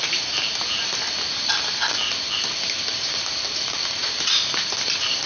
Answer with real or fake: real